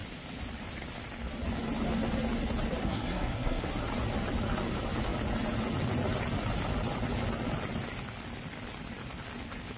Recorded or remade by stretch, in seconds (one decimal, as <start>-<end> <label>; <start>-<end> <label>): 0.0-2.8 recorded; 2.8-3.7 remade; 3.7-9.8 recorded